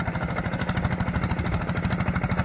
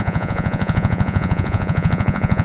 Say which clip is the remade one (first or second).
second